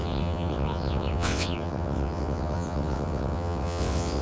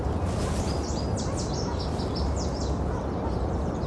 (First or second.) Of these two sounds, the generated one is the first